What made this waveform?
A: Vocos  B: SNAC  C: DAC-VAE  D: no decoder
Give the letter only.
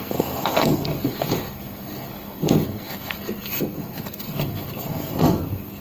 B